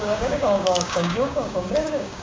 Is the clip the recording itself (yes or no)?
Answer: no